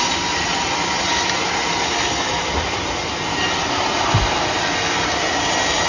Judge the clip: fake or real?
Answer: real